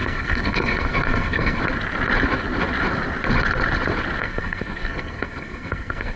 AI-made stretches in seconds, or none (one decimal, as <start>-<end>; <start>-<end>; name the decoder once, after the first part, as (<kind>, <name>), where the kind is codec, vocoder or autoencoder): 0.0-1.6 (codec, SNAC); 4.2-6.2